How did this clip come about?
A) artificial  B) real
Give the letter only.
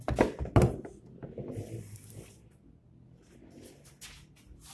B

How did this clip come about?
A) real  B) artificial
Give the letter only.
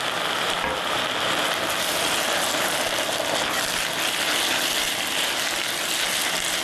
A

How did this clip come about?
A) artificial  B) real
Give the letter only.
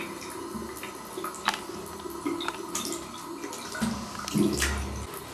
B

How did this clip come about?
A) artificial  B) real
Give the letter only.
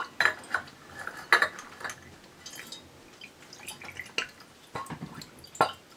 B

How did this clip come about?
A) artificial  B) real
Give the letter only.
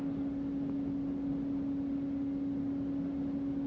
B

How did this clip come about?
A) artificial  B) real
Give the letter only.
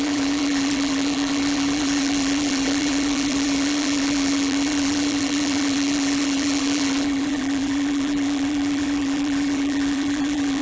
A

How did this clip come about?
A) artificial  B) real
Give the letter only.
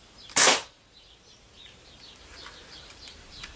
A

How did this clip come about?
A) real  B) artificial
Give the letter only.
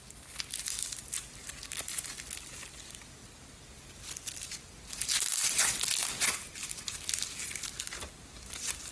A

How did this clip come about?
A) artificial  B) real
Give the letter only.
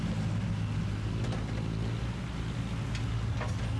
B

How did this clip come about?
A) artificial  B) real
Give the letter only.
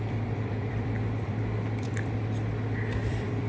A